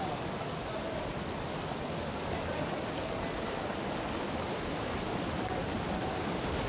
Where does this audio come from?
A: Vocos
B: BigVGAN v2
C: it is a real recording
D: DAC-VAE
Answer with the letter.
C